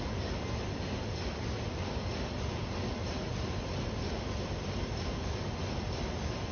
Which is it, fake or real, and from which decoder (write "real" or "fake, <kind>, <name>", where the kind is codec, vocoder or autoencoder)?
real